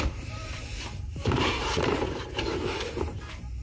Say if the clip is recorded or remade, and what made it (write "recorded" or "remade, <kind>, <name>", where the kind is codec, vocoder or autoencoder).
remade, vocoder, BigVGAN v2